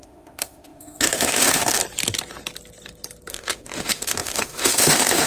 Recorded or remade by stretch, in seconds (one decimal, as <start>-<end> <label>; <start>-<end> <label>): 0.0-1.8 remade; 1.8-3.3 recorded; 3.3-5.3 remade